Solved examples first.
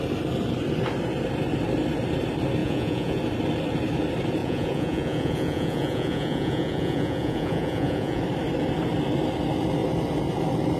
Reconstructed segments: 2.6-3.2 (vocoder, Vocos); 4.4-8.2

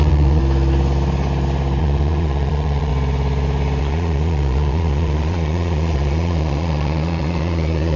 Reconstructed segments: 0.0-0.4 (vocoder, Vocos); 1.8-2.9; 3.8-8.0

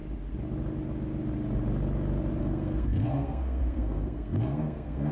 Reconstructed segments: 2.4-5.1 (codec, SNAC)

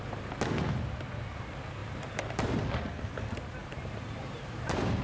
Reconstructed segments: 1.8-2.6 (vocoder, BigVGAN v2); 3.6-5.0